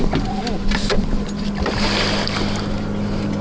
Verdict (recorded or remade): recorded